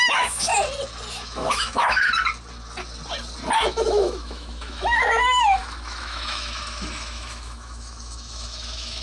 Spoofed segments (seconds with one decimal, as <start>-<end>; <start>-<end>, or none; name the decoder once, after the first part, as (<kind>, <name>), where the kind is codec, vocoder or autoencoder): 0.0-0.5 (autoencoder, DAC-VAE); 1.1-2.1; 3.6-9.0